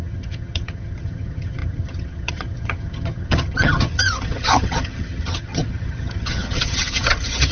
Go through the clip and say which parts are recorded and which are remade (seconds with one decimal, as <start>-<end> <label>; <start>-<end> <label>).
0.0-7.5 remade